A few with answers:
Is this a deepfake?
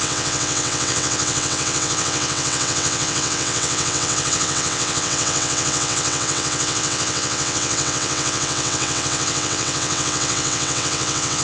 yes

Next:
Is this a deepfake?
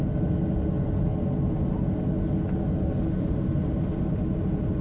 no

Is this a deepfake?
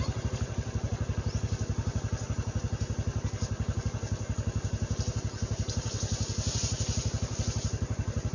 no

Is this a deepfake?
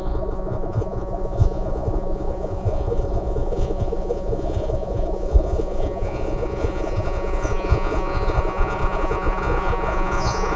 yes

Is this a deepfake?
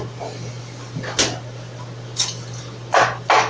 no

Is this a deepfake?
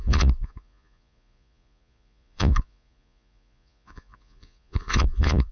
yes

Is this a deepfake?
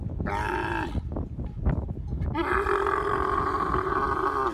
yes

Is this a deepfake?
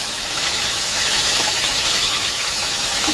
yes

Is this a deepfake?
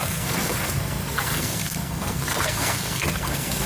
yes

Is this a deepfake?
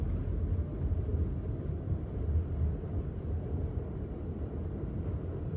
no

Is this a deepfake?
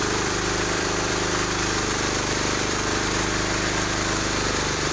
yes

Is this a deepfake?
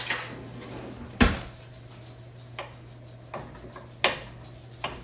no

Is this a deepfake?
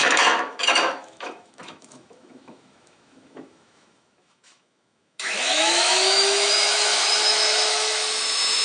yes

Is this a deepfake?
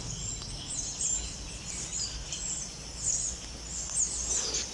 no